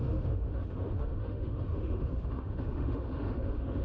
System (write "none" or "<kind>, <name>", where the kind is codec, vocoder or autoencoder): autoencoder, DAC-VAE